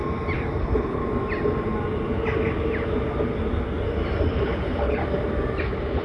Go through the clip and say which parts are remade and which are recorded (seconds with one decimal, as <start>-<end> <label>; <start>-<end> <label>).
0.0-0.6 recorded; 0.6-1.0 remade; 1.0-4.3 recorded; 4.3-5.0 remade; 5.0-5.6 recorded; 5.6-6.0 remade